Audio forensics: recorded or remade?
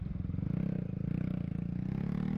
recorded